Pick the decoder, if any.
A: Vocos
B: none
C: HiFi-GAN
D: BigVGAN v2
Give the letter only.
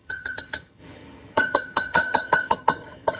C